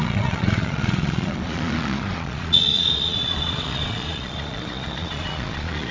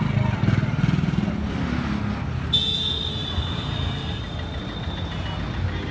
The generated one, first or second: first